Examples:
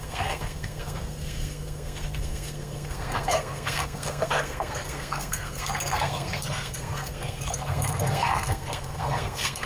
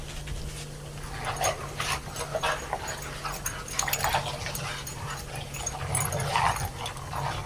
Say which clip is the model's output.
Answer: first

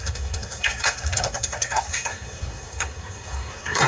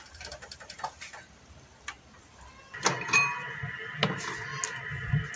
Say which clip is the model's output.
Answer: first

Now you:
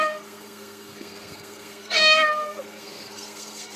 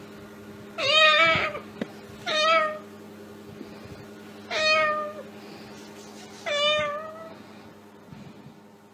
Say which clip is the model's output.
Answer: first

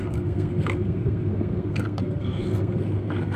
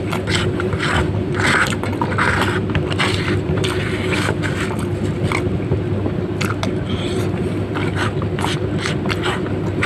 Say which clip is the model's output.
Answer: first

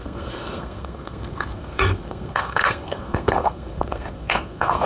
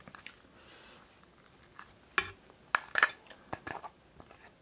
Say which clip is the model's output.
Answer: first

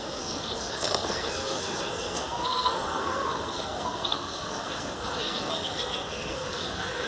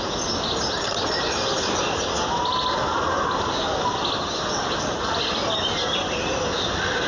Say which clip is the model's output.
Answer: first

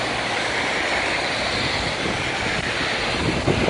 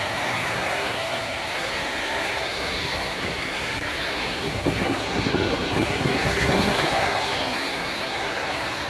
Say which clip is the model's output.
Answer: second